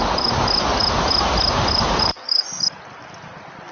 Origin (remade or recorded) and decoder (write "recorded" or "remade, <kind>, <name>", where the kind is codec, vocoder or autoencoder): recorded